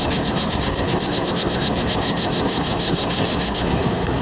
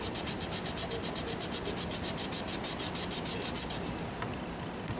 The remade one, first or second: first